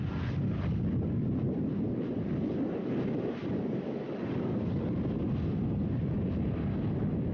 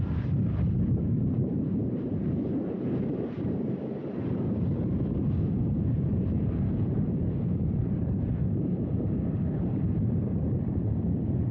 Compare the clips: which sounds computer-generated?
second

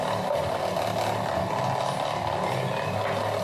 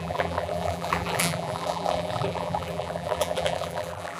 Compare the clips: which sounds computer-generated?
second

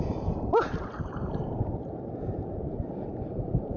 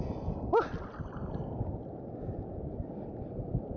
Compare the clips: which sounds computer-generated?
first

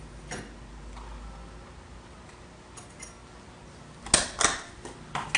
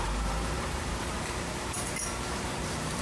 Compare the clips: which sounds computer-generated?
second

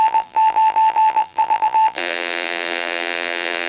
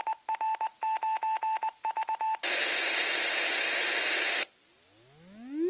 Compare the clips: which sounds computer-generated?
first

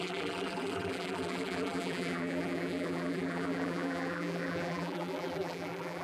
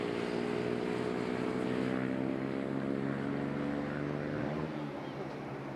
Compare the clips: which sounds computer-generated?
first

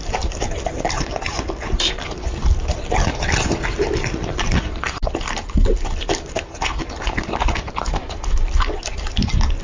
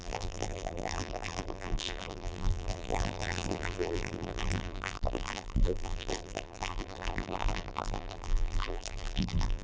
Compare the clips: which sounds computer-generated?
second